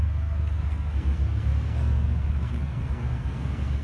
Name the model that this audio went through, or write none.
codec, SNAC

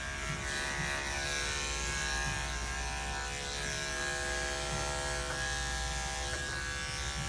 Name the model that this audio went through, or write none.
none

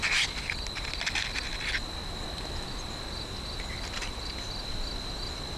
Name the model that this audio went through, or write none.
none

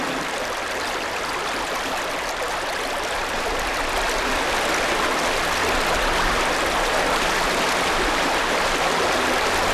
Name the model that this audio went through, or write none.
none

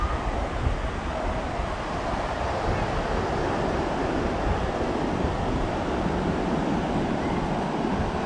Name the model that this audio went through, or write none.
none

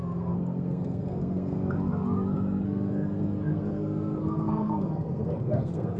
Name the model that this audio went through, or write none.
codec, SNAC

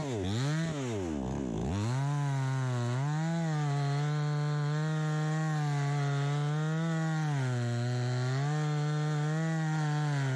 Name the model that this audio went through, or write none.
none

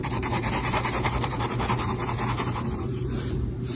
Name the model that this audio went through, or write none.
vocoder, BigVGAN v2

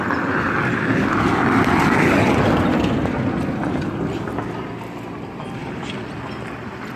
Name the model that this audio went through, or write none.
none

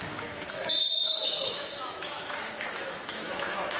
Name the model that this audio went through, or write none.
autoencoder, DAC-VAE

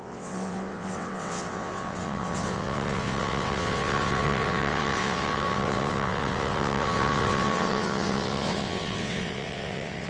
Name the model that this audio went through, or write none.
vocoder, WaveNeXt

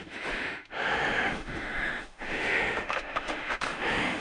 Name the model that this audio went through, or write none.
autoencoder, DAC-VAE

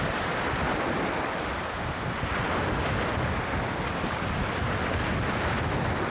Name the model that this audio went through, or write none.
none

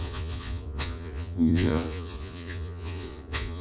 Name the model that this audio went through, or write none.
vocoder, Vocos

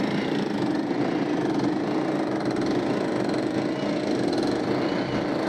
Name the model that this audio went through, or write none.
none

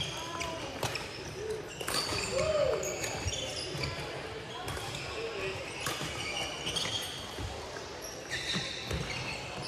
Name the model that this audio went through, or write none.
none